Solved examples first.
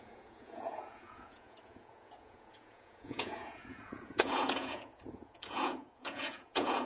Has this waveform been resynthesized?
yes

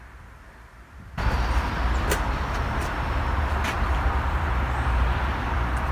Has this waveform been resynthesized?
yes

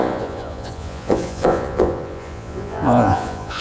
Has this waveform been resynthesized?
yes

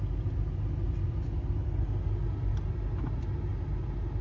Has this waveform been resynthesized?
no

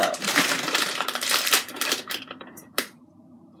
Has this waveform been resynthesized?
yes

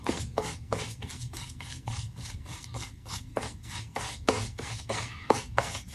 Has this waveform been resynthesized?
yes